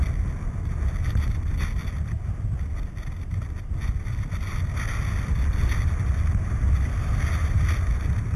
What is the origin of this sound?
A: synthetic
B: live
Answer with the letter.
B